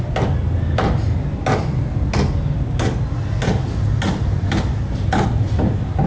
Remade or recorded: recorded